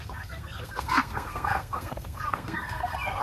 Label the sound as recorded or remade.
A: remade